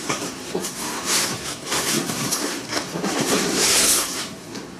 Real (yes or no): no